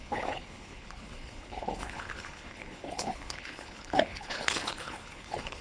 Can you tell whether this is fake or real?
fake